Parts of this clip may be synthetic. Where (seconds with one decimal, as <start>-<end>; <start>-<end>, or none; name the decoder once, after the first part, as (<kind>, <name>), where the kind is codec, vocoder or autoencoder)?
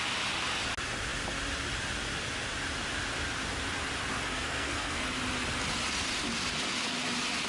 4.3-5.0 (codec, SNAC)